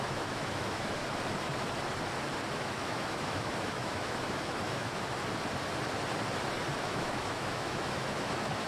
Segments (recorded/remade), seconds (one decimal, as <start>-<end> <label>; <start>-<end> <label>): 0.0-1.0 remade; 1.0-2.5 recorded; 2.5-5.2 remade; 5.2-6.8 recorded; 6.8-8.7 remade